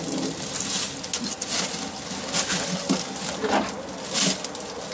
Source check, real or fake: real